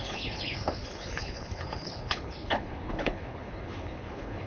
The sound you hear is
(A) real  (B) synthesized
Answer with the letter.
B